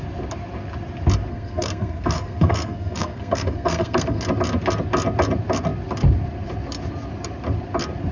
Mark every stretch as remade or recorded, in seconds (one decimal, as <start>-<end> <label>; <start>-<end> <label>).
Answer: 0.0-1.3 recorded; 1.3-4.2 remade; 4.2-8.1 recorded